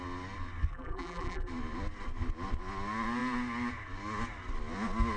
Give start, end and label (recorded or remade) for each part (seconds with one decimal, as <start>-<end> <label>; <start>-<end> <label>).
0.0-0.7 recorded; 0.7-1.5 remade; 1.5-5.2 recorded